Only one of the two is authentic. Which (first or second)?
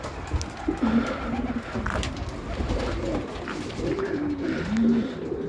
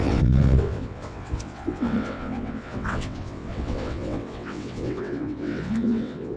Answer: first